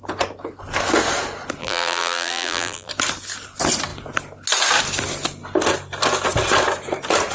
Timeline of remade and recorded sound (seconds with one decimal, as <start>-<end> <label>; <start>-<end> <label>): 0.0-1.6 recorded; 1.6-2.9 remade; 2.9-7.3 recorded